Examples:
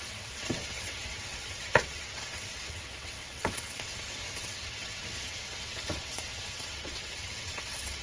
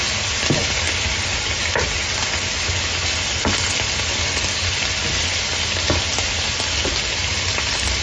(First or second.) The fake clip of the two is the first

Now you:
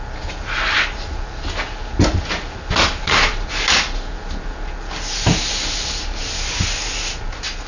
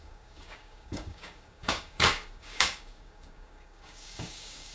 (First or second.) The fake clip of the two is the second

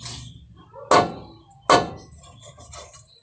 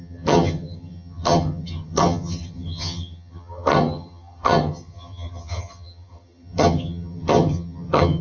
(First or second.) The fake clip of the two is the second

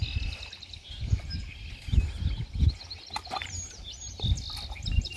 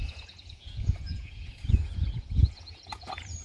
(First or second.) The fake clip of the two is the second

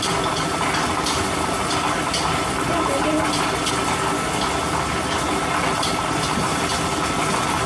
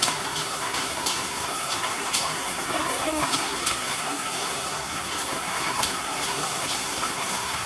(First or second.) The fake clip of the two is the second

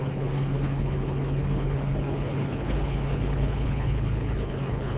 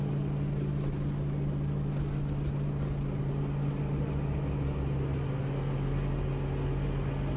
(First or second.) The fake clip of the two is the first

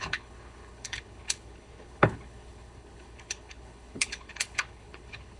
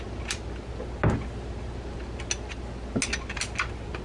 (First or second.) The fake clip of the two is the first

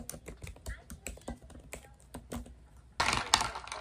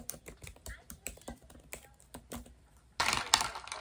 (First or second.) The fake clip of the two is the second